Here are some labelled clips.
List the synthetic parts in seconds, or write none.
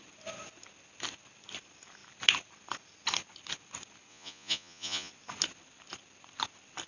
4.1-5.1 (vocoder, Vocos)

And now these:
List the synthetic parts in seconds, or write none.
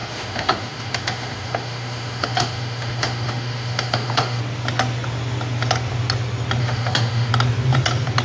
0.0-4.4 (autoencoder, DAC-VAE); 6.6-7.3